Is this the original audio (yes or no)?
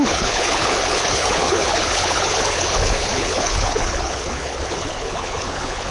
no